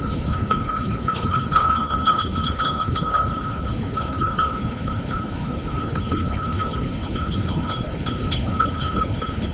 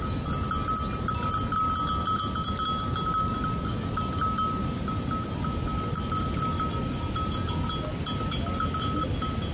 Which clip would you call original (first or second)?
second